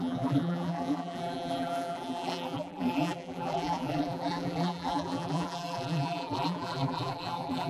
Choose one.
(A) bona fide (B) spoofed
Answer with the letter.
B